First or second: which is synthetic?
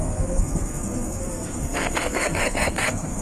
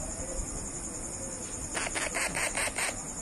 first